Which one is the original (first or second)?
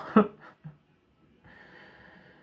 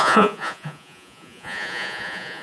first